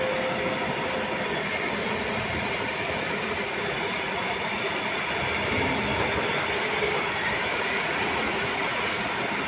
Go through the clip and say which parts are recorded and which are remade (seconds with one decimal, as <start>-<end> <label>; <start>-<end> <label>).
0.0-1.8 recorded; 1.8-5.2 remade; 5.2-7.5 recorded; 7.5-9.1 remade; 9.1-9.5 recorded